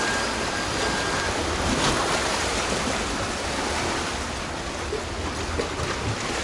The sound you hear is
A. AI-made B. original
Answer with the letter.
B